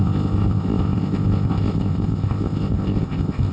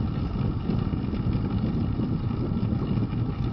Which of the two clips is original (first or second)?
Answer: second